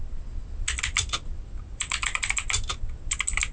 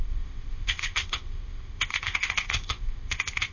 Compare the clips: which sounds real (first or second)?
first